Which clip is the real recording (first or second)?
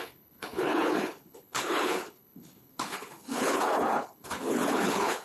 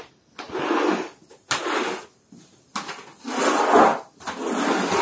second